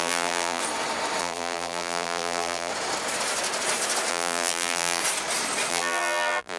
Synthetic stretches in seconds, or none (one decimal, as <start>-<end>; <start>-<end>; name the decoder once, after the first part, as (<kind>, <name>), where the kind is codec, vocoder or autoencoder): 0.0-0.6 (vocoder, BigVGAN v2); 1.2-2.7; 4.1-5.0; 5.7-6.6